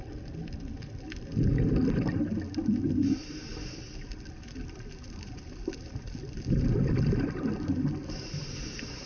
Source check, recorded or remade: recorded